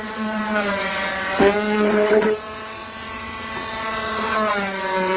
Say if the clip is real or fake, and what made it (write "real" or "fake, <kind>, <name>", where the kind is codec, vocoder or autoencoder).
fake, vocoder, WaveNeXt